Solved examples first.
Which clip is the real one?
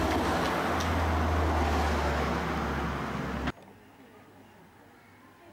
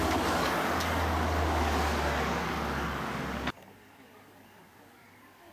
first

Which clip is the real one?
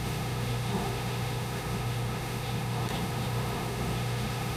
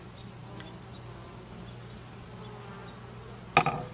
second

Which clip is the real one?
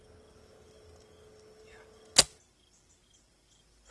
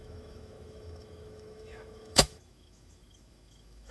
first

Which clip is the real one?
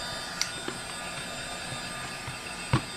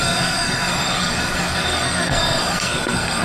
first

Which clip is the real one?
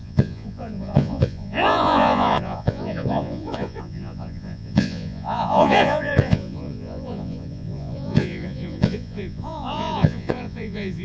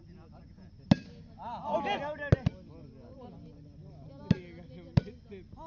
second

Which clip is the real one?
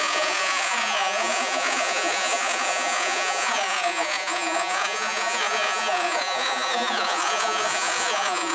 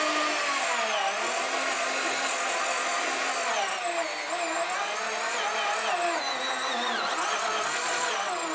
second